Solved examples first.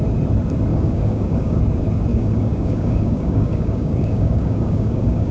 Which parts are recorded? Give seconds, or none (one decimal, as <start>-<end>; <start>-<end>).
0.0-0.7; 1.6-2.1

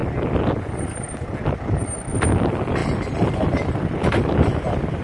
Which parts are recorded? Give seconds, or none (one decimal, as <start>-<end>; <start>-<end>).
0.0-5.0

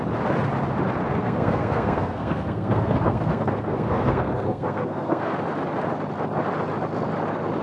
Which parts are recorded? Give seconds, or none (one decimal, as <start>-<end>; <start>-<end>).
0.0-1.1; 5.3-7.6